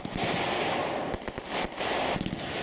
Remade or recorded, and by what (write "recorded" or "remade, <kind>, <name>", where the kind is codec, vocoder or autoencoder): recorded